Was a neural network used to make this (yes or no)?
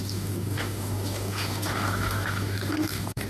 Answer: yes